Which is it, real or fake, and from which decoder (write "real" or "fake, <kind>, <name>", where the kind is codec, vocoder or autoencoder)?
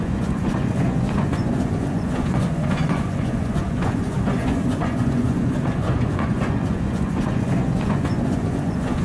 fake, vocoder, Vocos